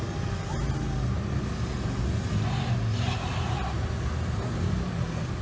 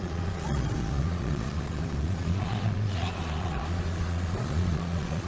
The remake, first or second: second